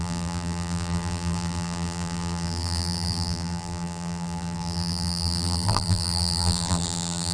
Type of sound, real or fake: fake